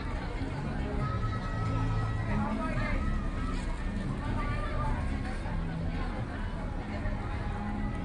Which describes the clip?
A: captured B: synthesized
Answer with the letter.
A